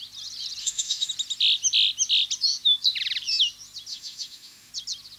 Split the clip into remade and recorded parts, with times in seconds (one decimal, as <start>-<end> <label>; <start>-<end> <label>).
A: 0.0-0.6 recorded; 0.6-1.1 remade; 1.1-3.9 recorded; 3.9-4.7 remade; 4.7-5.2 recorded

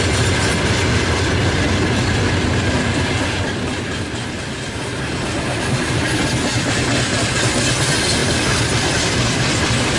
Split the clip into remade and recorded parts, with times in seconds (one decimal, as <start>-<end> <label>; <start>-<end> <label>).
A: 0.0-8.2 recorded; 8.2-8.9 remade; 8.9-10.0 recorded

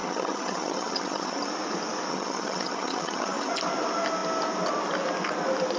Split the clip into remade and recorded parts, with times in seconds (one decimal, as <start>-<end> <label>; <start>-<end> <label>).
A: 0.0-1.5 remade; 1.5-2.1 recorded; 2.1-3.5 remade; 3.5-5.8 recorded